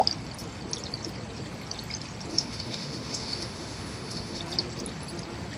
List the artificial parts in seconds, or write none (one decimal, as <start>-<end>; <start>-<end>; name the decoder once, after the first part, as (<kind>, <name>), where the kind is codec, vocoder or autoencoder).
2.3-4.4 (autoencoder, DAC-VAE)